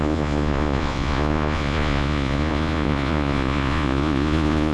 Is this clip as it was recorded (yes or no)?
no